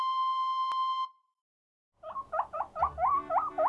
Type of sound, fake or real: real